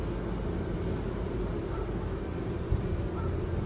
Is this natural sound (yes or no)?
yes